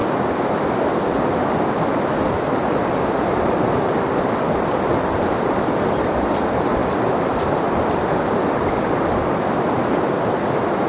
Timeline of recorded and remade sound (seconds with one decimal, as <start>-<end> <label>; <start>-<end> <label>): 0.0-0.7 recorded; 0.7-10.9 remade

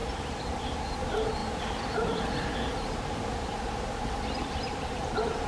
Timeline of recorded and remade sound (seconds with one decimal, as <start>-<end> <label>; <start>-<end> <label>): 0.0-1.4 recorded; 1.4-4.7 remade; 4.7-5.5 recorded

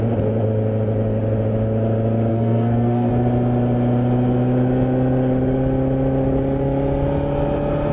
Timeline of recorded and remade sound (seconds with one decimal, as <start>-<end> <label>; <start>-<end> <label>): 0.0-2.3 recorded; 2.3-3.1 remade; 3.1-7.9 recorded

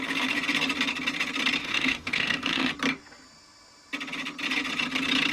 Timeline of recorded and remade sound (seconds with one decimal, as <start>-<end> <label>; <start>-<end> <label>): 0.0-1.6 recorded; 1.6-2.7 remade; 2.7-5.3 recorded